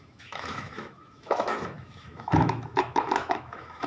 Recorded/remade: remade